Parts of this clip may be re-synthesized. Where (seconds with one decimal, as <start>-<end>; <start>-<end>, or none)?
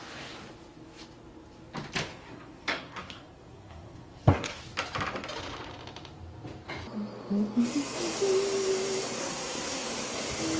2.1-4.6; 9.2-9.9